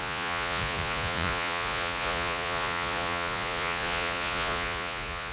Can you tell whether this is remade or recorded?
remade